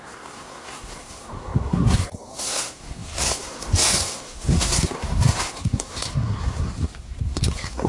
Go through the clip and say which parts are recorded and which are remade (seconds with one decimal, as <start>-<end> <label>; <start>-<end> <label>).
0.0-7.9 remade